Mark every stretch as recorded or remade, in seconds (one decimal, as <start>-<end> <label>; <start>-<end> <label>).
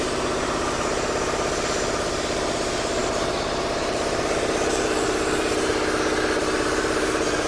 0.0-5.7 remade; 5.7-6.4 recorded; 6.4-7.5 remade